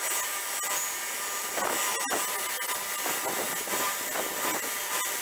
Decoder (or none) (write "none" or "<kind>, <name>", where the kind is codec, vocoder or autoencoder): none